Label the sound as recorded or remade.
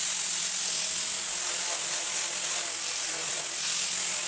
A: recorded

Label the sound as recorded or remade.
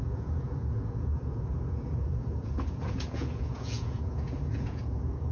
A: remade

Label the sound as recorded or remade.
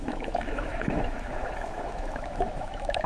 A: remade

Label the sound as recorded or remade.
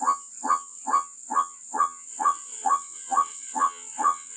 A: remade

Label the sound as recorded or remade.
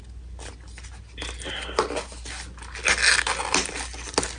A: recorded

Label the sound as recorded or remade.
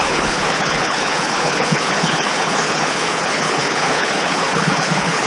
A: remade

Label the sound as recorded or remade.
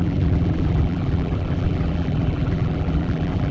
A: remade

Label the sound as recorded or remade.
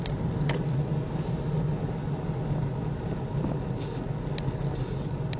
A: recorded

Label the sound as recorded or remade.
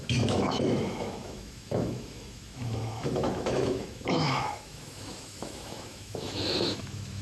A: remade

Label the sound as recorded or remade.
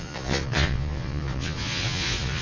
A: remade